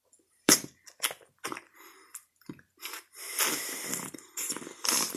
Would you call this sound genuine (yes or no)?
no